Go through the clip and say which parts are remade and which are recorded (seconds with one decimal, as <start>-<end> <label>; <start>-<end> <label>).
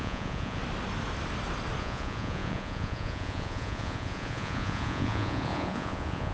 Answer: 0.0-0.6 remade; 0.6-1.8 recorded; 1.8-6.3 remade